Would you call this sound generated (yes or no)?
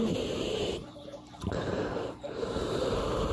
yes